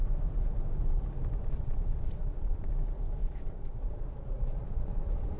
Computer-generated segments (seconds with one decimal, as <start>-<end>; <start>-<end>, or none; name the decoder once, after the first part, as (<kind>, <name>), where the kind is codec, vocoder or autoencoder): 1.4-2.7 (vocoder, Vocos); 3.2-5.4